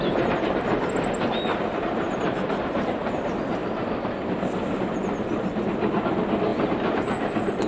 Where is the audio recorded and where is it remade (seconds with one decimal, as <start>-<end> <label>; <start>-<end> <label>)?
0.0-1.5 recorded; 1.5-3.2 remade; 3.2-6.5 recorded; 6.5-7.7 remade